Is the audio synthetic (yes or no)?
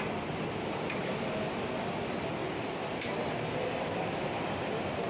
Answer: no